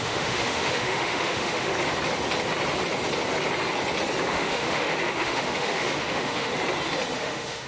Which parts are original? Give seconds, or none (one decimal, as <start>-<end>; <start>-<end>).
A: 1.7-4.3; 6.5-7.1